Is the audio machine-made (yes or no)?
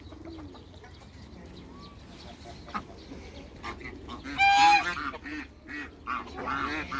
no